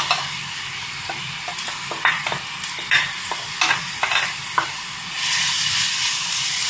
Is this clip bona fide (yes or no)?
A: yes